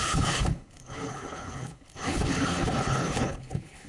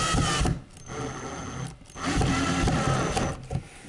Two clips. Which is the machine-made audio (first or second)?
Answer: first